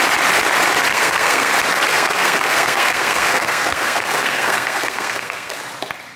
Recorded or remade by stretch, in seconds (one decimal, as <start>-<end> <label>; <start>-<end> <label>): 0.0-0.9 recorded; 0.9-1.5 remade; 1.5-1.9 recorded; 1.9-5.6 remade; 5.6-6.2 recorded